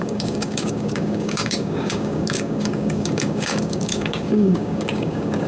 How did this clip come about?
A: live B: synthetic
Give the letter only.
B